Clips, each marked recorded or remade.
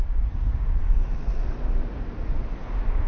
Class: recorded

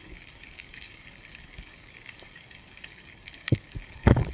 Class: remade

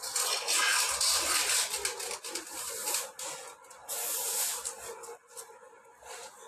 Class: recorded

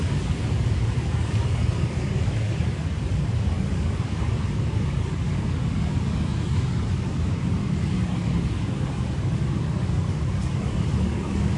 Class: remade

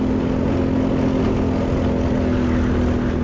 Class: recorded